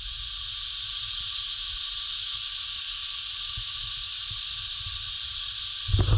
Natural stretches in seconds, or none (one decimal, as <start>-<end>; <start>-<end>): 0.0-6.2